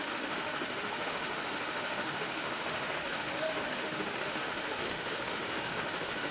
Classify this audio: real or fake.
fake